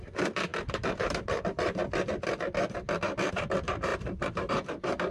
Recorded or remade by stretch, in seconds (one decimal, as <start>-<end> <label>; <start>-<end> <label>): 0.0-1.8 remade; 1.8-3.3 recorded; 3.3-5.1 remade